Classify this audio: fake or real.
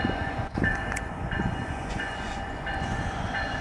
fake